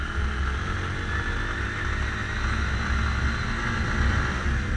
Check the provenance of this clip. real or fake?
real